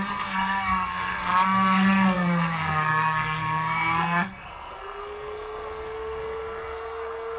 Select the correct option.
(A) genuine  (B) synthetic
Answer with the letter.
B